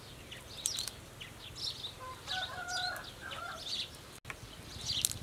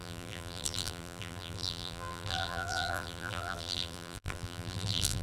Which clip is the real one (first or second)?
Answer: first